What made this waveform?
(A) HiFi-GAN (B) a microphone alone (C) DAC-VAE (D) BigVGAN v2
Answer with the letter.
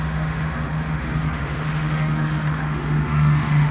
C